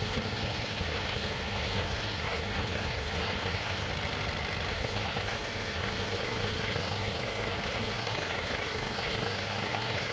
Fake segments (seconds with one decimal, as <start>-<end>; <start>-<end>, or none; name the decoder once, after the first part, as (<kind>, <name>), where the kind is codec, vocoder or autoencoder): 0.0-3.9 (codec, SNAC); 4.7-10.1